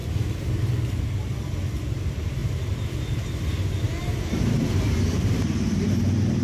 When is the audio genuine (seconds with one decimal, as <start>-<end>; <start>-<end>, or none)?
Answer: 0.0-4.0; 5.9-6.4